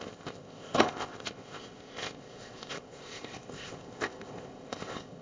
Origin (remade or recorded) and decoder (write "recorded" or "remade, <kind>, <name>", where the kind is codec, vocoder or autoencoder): remade, codec, ZipCodec